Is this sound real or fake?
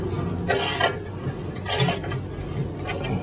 real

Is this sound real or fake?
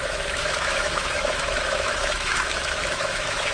fake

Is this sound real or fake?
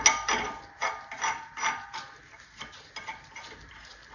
real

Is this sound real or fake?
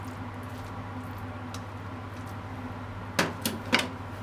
real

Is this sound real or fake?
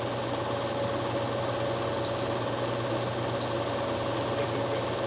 real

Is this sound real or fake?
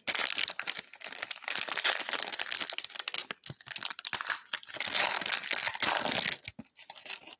real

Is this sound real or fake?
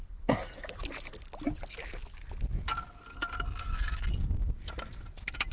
real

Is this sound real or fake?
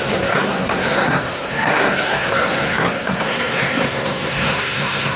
fake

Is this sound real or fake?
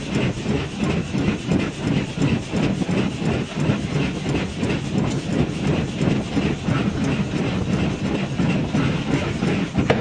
real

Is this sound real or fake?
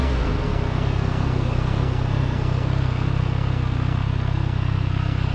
fake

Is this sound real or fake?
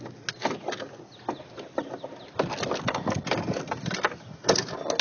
real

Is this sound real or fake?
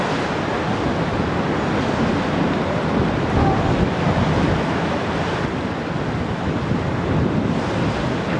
real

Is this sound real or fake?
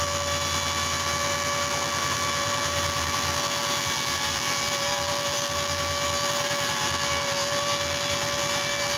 fake